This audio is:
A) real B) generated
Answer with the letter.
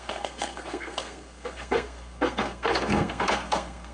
B